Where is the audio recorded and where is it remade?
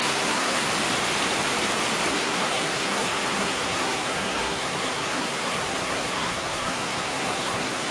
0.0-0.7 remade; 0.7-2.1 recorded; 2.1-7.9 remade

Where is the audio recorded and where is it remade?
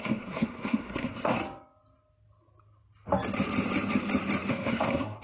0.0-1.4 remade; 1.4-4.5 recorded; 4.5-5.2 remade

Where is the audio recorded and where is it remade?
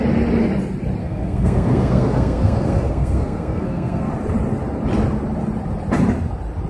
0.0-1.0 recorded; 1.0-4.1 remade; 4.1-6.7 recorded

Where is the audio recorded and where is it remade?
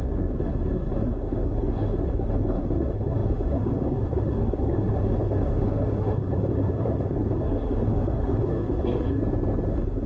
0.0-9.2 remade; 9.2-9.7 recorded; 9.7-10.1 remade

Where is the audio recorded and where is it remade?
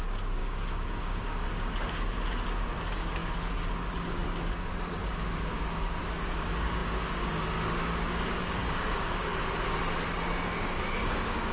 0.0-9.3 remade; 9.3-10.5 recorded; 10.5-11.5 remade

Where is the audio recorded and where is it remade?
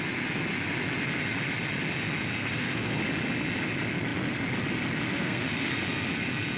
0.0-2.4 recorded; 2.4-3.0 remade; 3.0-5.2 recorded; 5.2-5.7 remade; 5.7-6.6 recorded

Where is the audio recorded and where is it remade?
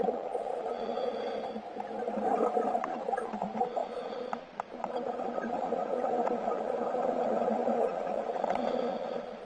0.0-1.1 remade; 1.1-2.8 recorded; 2.8-9.5 remade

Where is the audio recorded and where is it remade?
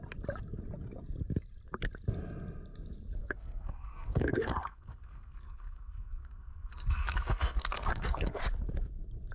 0.0-3.2 recorded; 3.2-8.4 remade; 8.4-9.3 recorded